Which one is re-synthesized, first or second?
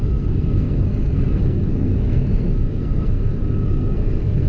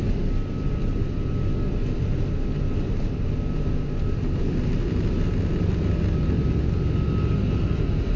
first